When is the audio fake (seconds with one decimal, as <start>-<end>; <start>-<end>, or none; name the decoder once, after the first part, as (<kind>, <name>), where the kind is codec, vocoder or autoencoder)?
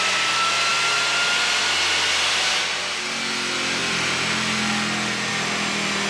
none